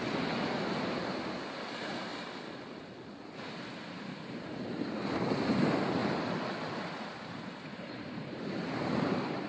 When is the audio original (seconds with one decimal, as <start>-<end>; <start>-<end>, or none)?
2.1-5.5; 6.0-7.3